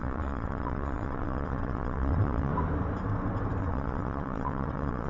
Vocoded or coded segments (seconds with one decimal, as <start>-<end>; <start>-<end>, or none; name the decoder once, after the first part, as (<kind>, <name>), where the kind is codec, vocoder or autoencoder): 0.0-2.5 (vocoder, WaveNeXt); 3.6-5.1